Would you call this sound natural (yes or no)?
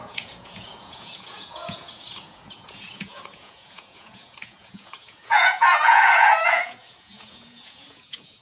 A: no